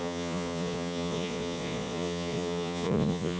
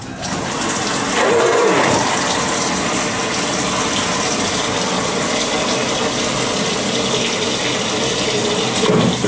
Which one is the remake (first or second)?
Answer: first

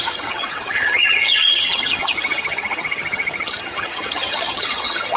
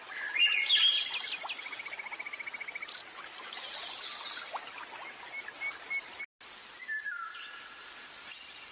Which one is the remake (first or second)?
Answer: first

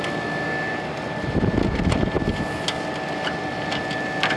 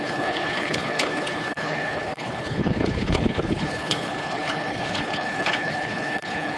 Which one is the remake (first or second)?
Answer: second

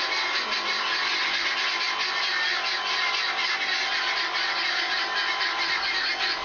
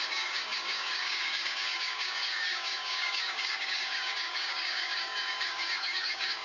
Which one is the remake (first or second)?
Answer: second